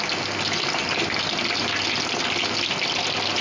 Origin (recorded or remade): recorded